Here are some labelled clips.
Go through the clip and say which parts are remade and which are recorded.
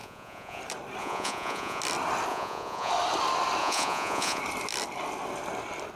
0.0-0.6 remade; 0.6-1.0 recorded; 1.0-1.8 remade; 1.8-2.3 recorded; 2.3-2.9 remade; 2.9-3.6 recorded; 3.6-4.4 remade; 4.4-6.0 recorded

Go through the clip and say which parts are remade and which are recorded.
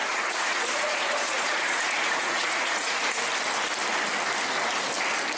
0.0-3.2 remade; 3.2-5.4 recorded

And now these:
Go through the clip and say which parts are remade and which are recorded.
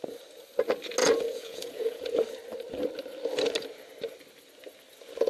0.0-1.0 recorded; 1.0-2.1 remade; 2.1-5.3 recorded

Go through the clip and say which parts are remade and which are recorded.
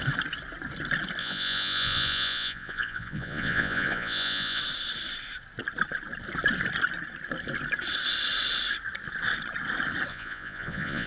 0.0-1.2 recorded; 1.2-4.6 remade; 4.6-10.1 recorded; 10.1-11.1 remade